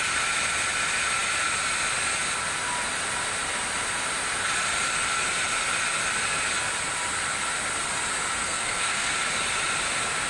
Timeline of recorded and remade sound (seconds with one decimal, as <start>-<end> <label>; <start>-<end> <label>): 0.0-8.4 recorded; 8.4-9.1 remade; 9.1-10.3 recorded